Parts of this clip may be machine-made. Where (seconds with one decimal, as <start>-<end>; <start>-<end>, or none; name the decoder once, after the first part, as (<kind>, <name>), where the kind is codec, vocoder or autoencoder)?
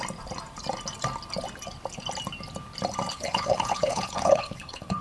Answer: 3.1-5.0 (codec, HILCodec)